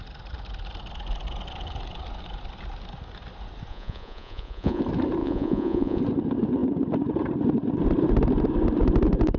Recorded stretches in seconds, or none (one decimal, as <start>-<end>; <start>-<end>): 0.0-3.7; 4.8-5.2; 6.0-9.4